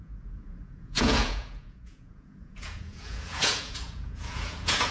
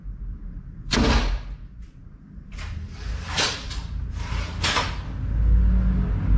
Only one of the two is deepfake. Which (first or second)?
first